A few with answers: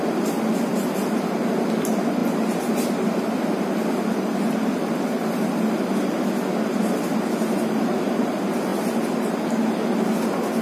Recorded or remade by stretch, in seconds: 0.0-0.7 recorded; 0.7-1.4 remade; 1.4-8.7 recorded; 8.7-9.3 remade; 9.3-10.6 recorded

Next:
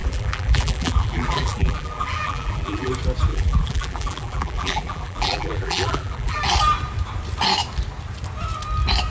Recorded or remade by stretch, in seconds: 0.0-2.9 remade; 2.9-3.3 recorded; 3.3-6.4 remade; 6.4-9.1 recorded

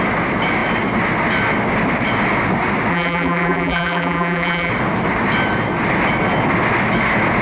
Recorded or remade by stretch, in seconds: 0.0-2.9 recorded; 2.9-4.7 remade; 4.7-7.4 recorded